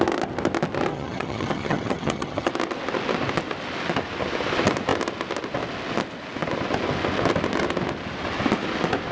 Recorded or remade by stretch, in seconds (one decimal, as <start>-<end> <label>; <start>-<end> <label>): 0.0-0.9 recorded; 0.9-2.5 remade; 2.5-9.1 recorded